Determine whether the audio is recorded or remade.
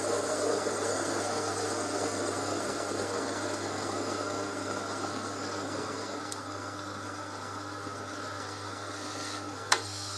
remade